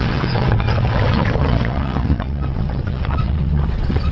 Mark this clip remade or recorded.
remade